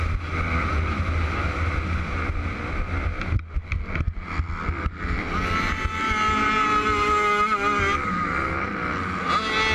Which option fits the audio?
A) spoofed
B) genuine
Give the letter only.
B